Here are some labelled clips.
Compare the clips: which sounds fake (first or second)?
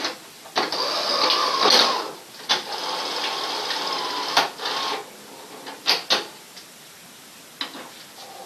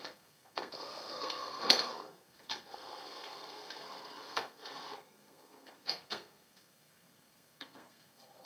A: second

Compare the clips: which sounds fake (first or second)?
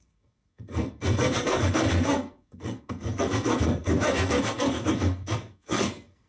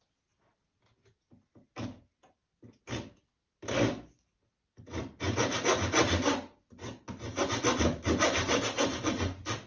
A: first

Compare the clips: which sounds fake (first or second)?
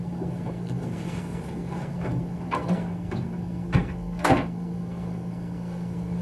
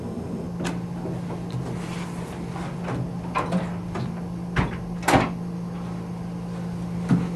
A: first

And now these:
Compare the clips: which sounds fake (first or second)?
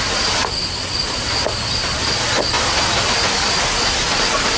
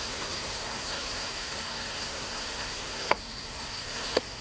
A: second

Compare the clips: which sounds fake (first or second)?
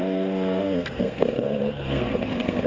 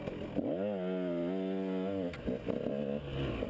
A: first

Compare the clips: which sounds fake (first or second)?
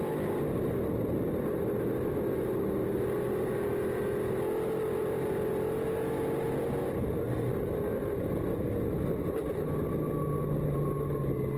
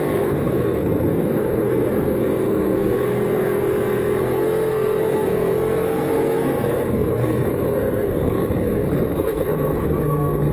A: second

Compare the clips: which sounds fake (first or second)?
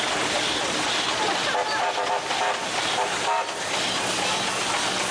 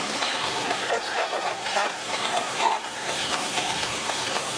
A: second